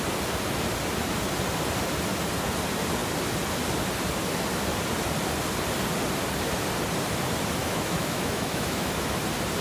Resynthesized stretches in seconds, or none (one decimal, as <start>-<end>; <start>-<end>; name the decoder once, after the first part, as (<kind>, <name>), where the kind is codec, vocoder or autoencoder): 7.6-9.2 (autoencoder, DAC-VAE)